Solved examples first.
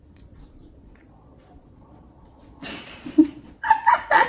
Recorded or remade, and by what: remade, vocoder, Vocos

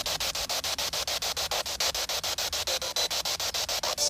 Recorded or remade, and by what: recorded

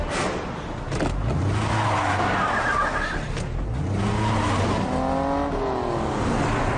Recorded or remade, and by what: recorded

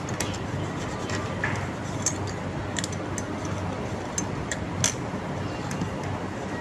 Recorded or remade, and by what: recorded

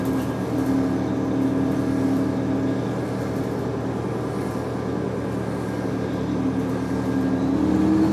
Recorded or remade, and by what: recorded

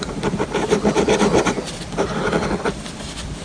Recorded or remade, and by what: recorded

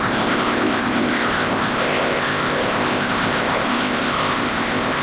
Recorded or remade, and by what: remade, codec, ZipCodec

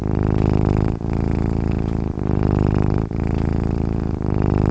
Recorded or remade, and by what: recorded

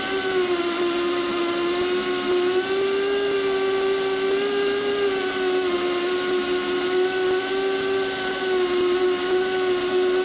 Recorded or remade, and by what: recorded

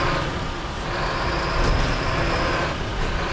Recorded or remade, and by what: recorded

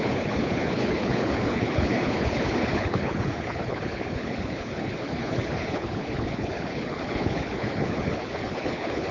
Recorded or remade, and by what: remade, codec, HILCodec